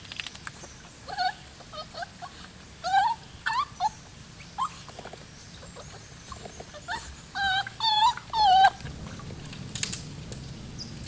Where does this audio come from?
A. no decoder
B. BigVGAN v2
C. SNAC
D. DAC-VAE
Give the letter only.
A